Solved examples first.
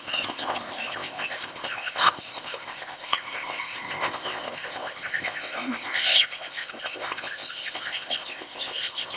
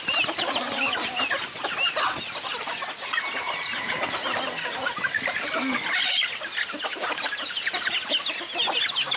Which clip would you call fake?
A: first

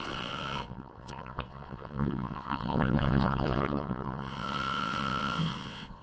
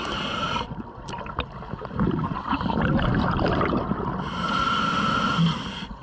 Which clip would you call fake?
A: first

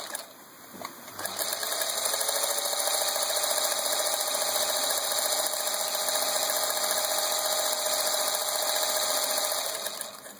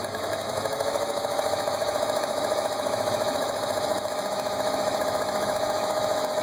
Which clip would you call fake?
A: second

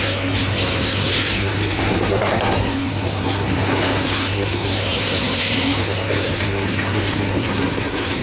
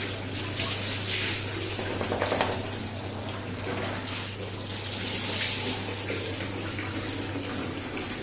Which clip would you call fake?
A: first